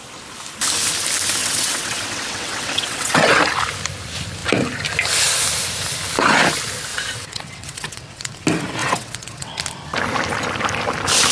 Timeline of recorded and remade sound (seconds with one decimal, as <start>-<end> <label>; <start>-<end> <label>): 0.0-1.4 recorded; 1.4-3.4 remade; 3.4-6.9 recorded; 6.9-8.3 remade; 8.3-8.8 recorded; 8.8-9.6 remade; 9.6-11.3 recorded